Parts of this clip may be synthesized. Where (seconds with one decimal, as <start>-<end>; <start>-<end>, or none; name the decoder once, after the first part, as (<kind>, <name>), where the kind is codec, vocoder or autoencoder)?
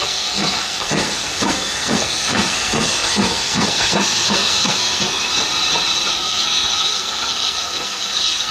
0.0-5.3 (codec, SNAC); 6.1-8.5